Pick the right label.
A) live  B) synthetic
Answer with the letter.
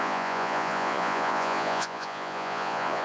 B